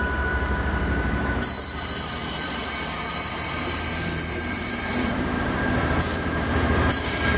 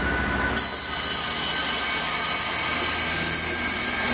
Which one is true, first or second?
second